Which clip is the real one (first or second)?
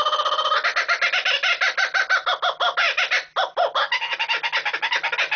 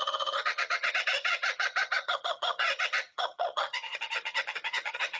first